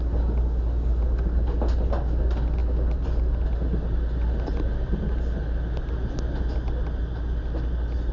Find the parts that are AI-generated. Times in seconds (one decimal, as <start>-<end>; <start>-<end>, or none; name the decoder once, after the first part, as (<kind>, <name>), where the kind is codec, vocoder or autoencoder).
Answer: none